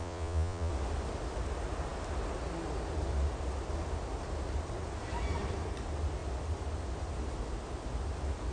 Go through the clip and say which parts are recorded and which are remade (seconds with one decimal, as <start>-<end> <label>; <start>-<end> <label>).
0.0-0.7 remade; 0.7-8.5 recorded